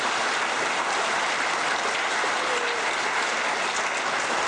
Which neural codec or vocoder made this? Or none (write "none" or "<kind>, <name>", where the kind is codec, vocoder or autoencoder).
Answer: none